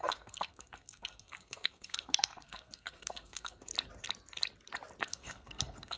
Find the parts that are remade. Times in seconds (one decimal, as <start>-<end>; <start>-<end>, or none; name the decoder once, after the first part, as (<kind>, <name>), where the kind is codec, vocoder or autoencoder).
0.0-3.7 (codec, SNAC); 5.0-6.0